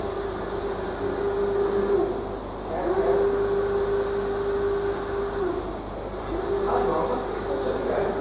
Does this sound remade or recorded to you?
recorded